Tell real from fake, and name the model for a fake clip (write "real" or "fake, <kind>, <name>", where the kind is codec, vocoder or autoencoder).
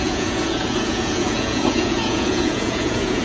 fake, vocoder, Vocos